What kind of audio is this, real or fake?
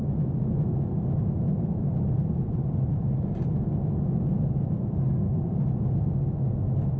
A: real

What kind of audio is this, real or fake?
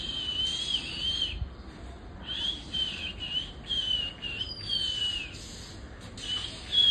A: real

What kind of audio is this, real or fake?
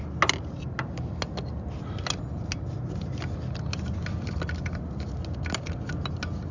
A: real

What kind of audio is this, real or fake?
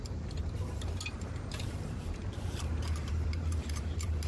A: fake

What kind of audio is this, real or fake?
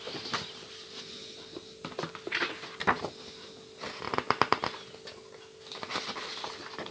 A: real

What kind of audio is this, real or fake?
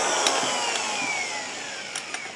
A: real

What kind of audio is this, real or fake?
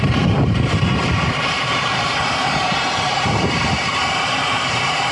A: fake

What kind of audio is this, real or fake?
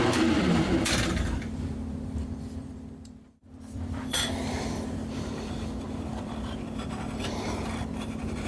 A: fake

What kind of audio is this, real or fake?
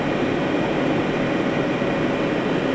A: real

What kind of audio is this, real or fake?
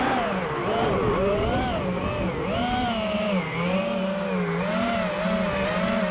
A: real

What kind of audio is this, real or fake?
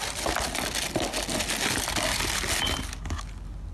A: real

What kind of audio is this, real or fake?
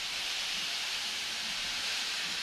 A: real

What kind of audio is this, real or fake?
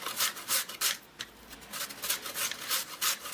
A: real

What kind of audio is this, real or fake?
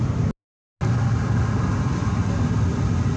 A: real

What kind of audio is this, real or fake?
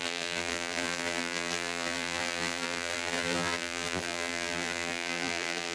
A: fake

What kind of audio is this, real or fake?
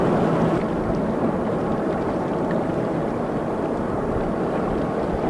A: real